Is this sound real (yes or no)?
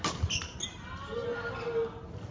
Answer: yes